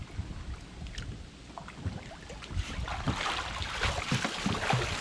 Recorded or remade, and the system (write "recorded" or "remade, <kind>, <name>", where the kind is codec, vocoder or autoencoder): recorded